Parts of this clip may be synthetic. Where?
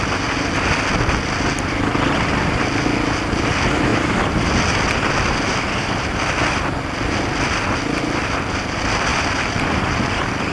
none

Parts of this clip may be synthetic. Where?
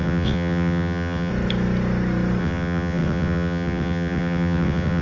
0.0-1.3 (vocoder, WaveNeXt); 2.4-5.0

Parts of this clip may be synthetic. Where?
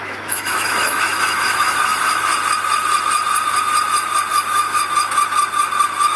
0.0-2.3 (autoencoder, DAC-VAE); 4.3-4.8